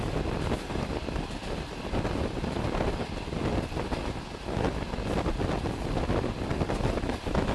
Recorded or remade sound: recorded